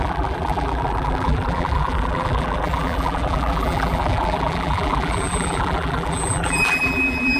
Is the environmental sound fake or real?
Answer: fake